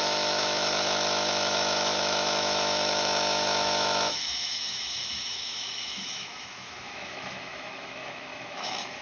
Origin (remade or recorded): remade